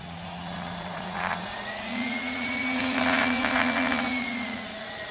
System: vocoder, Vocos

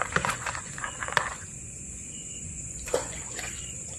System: vocoder, Vocos